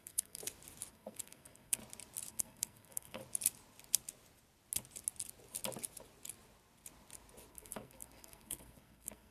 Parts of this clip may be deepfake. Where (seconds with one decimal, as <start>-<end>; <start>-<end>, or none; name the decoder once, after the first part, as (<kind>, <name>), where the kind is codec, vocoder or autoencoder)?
0.0-0.4 (codec, SNAC); 0.9-1.8; 2.3-3.2; 7.5-9.3